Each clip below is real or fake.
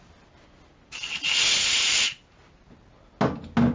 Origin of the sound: real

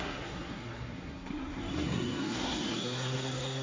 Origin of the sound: fake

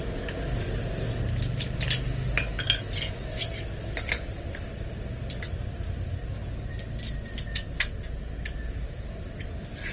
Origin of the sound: real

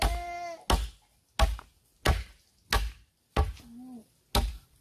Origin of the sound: real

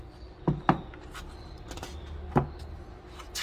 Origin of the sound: real